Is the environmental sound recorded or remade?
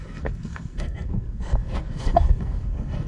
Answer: remade